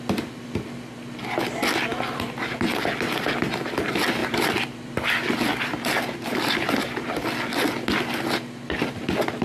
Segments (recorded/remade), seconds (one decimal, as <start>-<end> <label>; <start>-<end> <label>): 0.0-4.2 recorded; 4.2-6.7 remade; 6.7-9.4 recorded